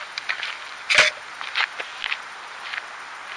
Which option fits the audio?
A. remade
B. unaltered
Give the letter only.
B